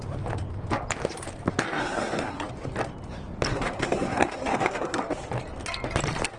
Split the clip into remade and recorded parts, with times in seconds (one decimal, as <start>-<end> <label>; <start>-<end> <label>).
0.0-1.8 recorded; 1.8-2.4 remade; 2.4-3.5 recorded; 3.5-5.0 remade; 5.0-6.4 recorded